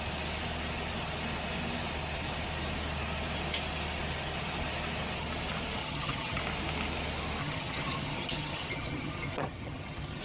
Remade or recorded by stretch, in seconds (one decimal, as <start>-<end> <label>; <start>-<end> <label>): 0.0-5.8 recorded; 5.8-6.4 remade; 6.4-7.4 recorded; 7.4-10.2 remade